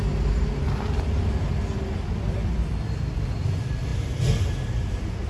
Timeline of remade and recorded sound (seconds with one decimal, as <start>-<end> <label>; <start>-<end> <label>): 0.0-5.3 recorded